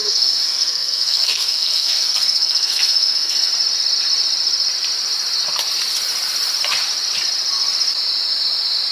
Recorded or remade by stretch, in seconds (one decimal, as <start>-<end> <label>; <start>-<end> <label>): 0.0-3.5 remade; 3.5-8.9 recorded